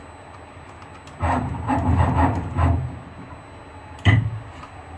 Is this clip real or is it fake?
real